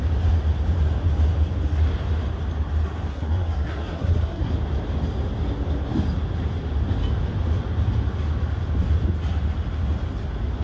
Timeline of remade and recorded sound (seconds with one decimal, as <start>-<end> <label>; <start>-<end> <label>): 0.0-3.1 recorded; 3.1-4.5 remade; 4.5-10.6 recorded